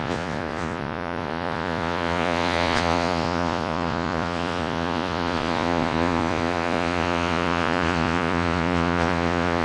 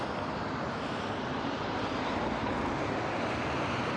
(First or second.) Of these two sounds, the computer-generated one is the first